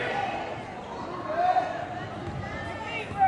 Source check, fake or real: real